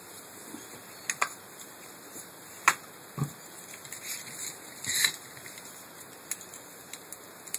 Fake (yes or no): yes